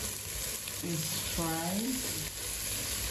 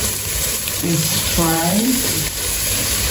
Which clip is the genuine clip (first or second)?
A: first